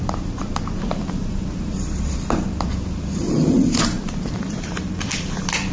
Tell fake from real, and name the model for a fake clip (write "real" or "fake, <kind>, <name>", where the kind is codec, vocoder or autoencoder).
fake, vocoder, BigVGAN v2